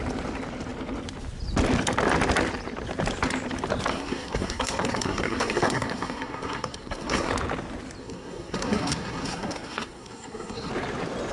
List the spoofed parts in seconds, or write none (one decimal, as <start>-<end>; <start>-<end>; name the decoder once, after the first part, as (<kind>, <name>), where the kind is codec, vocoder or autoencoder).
3.9-7.3 (codec, SNAC); 8.0-10.7

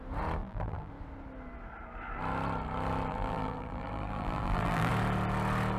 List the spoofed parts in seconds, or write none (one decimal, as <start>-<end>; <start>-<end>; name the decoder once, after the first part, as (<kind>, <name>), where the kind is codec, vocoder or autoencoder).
0.4-0.9 (vocoder, BigVGAN v2); 3.1-4.9